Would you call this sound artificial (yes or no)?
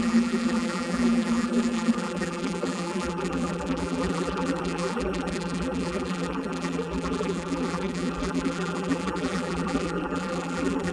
yes